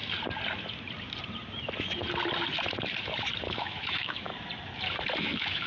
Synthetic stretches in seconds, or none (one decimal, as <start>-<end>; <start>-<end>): 3.4-4.3; 5.2-5.7